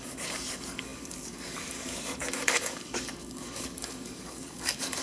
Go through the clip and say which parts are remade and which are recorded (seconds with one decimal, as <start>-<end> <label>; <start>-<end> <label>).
0.0-5.0 remade